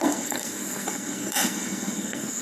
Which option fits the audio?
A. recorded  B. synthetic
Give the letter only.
B